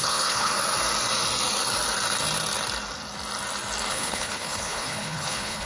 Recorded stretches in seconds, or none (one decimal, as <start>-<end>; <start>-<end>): 0.5-3.9